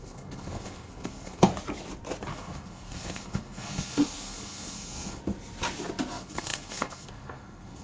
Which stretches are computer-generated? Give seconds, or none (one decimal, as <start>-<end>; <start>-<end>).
0.0-1.5; 2.3-5.2; 6.1-7.8